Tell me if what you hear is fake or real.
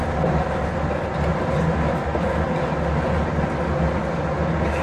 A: real